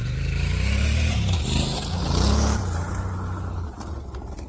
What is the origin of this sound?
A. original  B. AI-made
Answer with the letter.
A